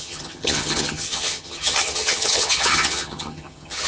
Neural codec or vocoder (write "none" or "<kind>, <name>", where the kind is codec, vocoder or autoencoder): vocoder, HiFi-GAN